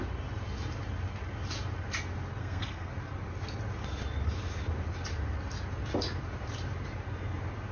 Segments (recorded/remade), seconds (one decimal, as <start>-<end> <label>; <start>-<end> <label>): 0.0-2.4 recorded; 2.4-2.9 remade; 2.9-7.7 recorded